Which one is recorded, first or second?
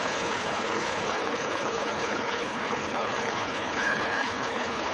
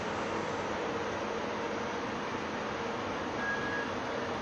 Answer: second